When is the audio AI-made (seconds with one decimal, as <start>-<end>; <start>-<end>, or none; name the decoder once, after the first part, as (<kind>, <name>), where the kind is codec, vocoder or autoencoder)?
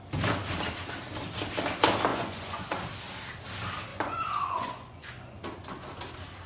2.1-2.8 (vocoder, Vocos); 3.9-5.4